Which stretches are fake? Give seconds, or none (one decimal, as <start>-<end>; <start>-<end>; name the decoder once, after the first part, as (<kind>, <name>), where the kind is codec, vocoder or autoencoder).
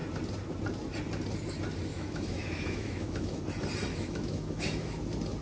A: 1.9-3.4 (autoencoder, DAC-VAE); 3.9-5.0